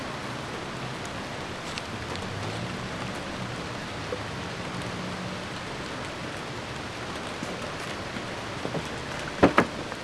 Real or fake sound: real